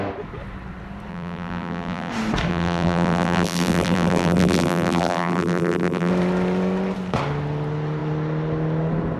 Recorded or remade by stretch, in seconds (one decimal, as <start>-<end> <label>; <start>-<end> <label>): 0.0-1.1 recorded; 1.1-2.1 remade; 2.1-2.5 recorded; 2.5-6.1 remade; 6.1-9.2 recorded